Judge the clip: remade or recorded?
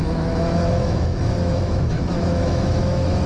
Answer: remade